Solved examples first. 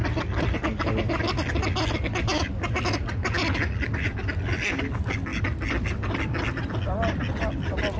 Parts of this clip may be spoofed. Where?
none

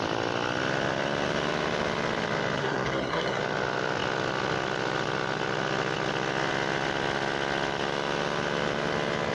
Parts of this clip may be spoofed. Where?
2.6-3.4 (codec, SNAC)

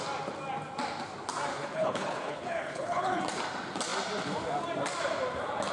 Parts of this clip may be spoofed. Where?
1.5-3.2 (codec, HILCodec)